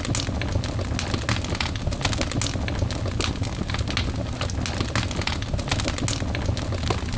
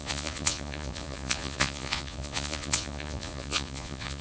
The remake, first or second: second